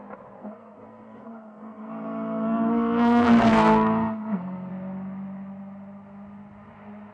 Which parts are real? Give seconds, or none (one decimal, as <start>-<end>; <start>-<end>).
0.0-0.4; 4.7-7.1